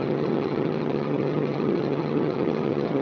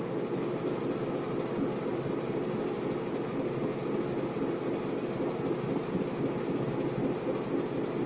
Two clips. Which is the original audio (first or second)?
second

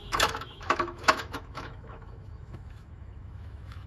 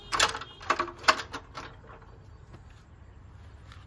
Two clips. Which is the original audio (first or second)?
second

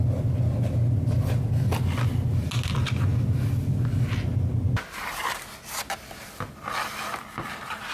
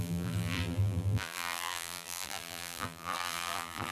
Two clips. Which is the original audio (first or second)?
first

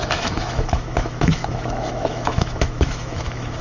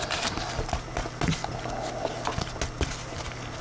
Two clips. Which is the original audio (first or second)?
second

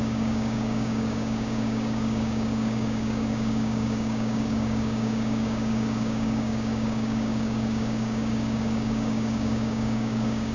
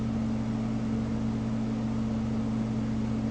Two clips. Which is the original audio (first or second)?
second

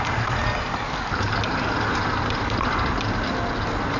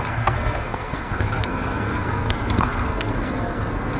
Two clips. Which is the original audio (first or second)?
first